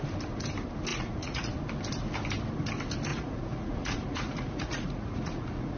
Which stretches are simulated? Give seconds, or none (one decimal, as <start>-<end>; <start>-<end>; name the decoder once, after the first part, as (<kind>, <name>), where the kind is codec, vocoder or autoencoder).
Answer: 0.9-1.5 (vocoder, Vocos); 3.1-5.8